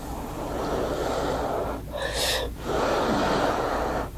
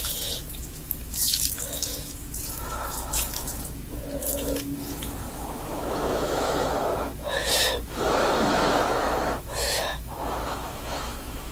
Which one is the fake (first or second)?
second